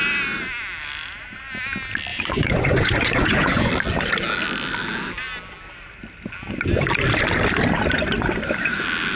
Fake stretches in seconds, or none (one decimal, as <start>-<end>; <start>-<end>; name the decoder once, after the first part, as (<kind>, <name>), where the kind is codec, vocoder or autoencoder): 2.1-3.7 (vocoder, Vocos)